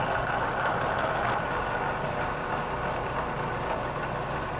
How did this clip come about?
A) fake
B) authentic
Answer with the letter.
B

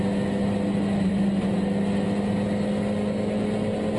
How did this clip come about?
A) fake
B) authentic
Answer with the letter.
B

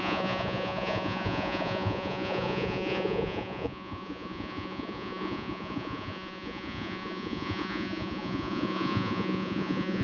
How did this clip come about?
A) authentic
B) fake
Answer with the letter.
B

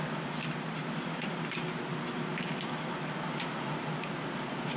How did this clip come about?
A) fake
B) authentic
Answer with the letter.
B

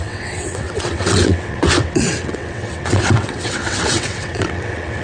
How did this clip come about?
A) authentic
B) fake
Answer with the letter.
B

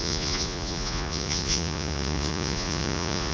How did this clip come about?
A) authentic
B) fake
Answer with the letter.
B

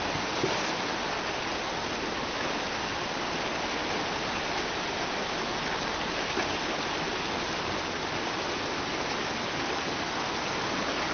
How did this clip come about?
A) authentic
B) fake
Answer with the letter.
A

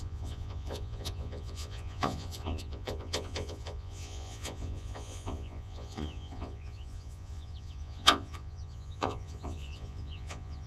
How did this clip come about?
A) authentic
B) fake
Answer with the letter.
B